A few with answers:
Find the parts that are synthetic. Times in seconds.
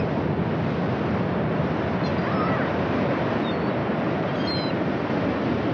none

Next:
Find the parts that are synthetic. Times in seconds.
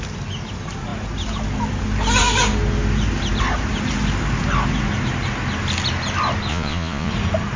6.5-7.1 (vocoder, Vocos)